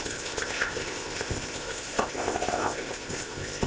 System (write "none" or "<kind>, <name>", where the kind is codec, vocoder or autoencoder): codec, ZipCodec